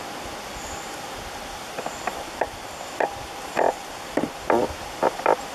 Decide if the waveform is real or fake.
real